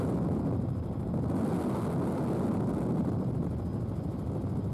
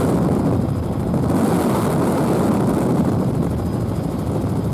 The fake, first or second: second